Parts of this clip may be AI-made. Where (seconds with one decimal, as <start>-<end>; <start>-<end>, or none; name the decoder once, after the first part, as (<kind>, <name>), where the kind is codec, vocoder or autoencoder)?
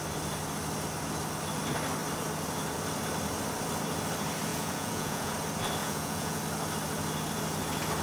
4.5-5.3 (vocoder, Vocos); 5.8-6.4